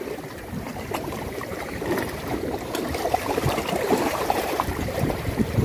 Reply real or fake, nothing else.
fake